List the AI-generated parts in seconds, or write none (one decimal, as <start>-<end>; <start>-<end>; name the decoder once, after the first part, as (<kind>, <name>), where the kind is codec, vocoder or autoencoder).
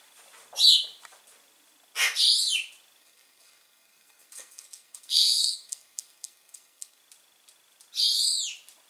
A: 3.0-7.0 (codec, SNAC)